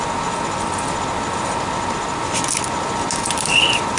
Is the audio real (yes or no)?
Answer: yes